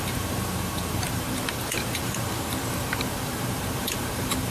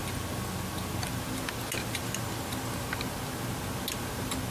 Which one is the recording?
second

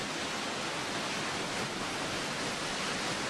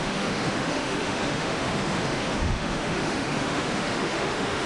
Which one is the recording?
first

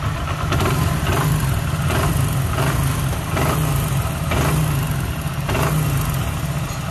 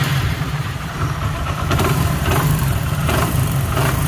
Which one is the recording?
first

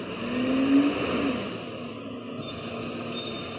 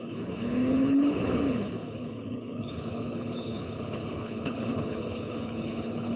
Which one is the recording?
first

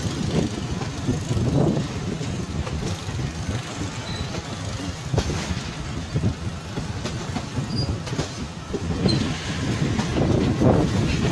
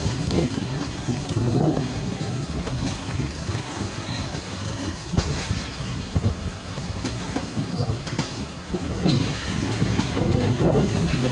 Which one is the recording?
first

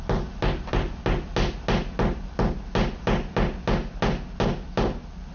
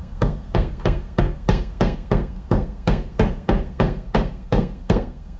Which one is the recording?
first